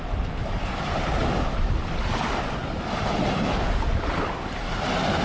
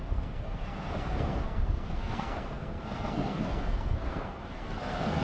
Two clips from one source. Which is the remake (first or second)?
second